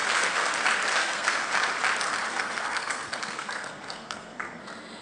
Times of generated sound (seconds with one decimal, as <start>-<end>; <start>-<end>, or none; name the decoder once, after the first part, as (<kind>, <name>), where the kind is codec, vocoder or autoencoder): 0.0-0.5 (codec, SNAC); 1.0-1.5; 2.3-4.6